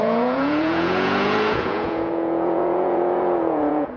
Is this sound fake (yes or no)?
yes